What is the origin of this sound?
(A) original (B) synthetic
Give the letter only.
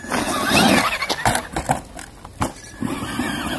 A